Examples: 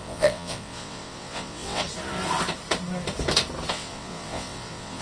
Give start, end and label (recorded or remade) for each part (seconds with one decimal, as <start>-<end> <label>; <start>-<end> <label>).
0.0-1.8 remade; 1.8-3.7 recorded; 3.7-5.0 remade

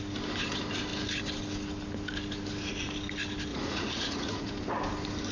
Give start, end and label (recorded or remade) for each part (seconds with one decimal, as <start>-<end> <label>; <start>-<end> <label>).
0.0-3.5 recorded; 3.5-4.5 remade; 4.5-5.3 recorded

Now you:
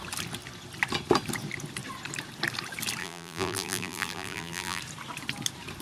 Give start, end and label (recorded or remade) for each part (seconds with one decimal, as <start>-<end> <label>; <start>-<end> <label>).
0.0-3.0 recorded; 3.0-4.8 remade; 4.8-5.8 recorded

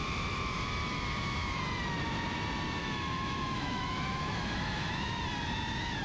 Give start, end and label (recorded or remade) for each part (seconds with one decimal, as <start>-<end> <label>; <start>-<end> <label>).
0.0-1.6 remade; 1.6-2.8 recorded; 2.8-5.2 remade; 5.2-6.0 recorded

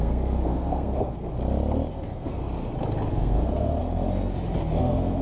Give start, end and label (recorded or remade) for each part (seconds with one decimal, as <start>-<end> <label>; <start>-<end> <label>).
0.0-1.3 remade; 1.3-1.9 recorded; 1.9-2.4 remade; 2.4-3.1 recorded; 3.1-3.8 remade; 3.8-4.8 recorded; 4.8-5.2 remade